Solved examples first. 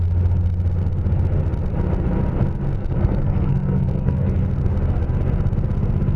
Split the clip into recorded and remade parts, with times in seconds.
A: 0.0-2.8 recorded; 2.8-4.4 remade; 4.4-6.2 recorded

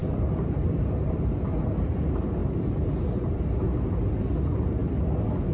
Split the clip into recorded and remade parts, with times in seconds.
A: 0.0-1.2 remade; 1.2-5.5 recorded

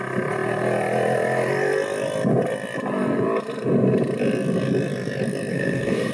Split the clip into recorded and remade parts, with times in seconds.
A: 0.0-5.5 recorded; 5.5-6.1 remade